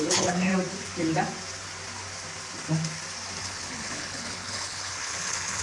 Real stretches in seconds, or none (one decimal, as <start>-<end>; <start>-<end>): 0.5-3.4